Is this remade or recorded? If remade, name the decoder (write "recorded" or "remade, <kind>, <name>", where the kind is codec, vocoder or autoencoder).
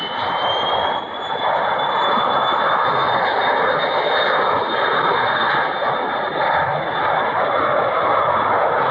recorded